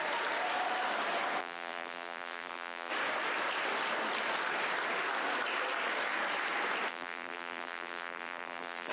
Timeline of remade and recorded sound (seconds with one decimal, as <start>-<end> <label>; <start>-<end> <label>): 0.0-1.4 recorded; 1.4-2.9 remade; 2.9-6.9 recorded; 6.9-8.9 remade